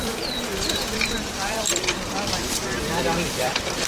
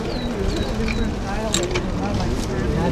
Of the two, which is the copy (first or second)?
first